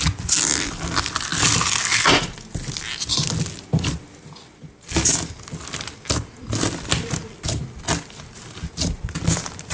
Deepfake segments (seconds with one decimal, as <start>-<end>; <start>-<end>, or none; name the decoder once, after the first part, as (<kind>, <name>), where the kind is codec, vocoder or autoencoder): none

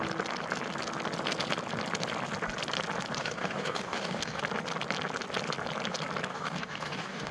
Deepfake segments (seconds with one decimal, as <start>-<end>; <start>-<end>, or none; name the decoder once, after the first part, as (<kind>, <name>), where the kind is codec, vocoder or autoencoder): 3.2-4.4 (codec, DAC); 6.3-7.3

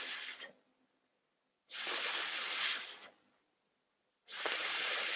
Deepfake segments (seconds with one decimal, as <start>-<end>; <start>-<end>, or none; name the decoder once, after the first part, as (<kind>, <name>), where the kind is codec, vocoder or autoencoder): none

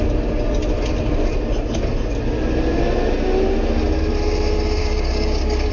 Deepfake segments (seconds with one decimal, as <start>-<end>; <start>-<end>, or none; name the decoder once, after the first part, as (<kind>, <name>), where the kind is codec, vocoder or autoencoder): 4.8-5.7 (codec, DAC)